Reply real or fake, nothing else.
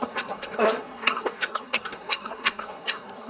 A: fake